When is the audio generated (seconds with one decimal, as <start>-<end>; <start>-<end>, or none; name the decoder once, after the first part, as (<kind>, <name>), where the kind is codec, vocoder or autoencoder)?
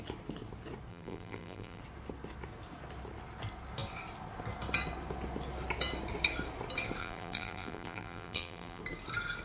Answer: 0.9-1.8 (vocoder, BigVGAN v2); 7.0-8.8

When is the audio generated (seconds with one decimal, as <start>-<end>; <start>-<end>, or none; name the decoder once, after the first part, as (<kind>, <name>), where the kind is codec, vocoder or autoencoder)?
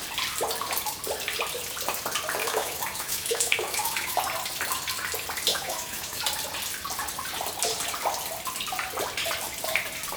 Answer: 2.4-4.2 (autoencoder, DAC-VAE); 5.5-6.2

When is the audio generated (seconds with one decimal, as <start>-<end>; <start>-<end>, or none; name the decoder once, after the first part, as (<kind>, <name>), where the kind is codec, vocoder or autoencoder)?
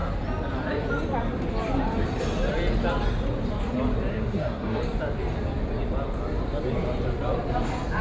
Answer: 4.1-4.8 (codec, SNAC)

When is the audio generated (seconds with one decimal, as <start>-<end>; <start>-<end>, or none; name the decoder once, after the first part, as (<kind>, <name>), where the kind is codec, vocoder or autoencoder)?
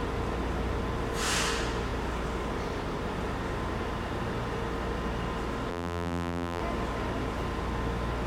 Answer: 5.7-6.6 (vocoder, BigVGAN v2)